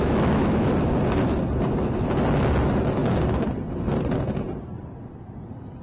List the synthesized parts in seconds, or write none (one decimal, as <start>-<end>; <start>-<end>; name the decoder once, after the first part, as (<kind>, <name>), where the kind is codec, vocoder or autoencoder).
0.0-0.7 (autoencoder, DAC-VAE)